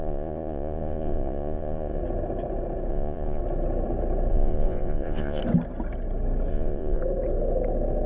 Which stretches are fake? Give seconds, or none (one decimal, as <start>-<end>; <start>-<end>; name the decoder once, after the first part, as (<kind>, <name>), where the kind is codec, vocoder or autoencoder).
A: 0.0-2.0 (vocoder, Vocos); 2.9-3.4; 4.3-5.4; 6.5-7.0